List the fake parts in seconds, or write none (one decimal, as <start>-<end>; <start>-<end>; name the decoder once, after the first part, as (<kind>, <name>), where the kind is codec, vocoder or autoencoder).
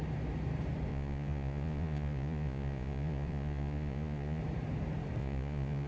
0.9-4.4 (vocoder, Vocos); 5.2-5.9